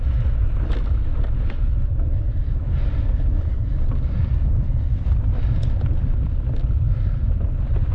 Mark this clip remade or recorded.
recorded